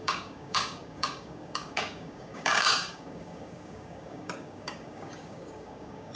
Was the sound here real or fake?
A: fake